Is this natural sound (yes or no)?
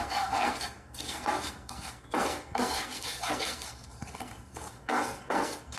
no